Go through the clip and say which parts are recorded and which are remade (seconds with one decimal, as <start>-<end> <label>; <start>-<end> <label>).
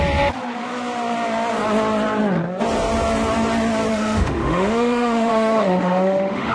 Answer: 0.0-3.9 recorded; 3.9-6.5 remade